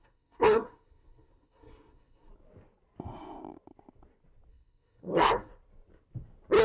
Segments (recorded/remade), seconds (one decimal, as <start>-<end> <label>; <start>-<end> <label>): 0.0-2.3 remade; 2.3-4.5 recorded; 4.5-5.5 remade; 5.5-6.6 recorded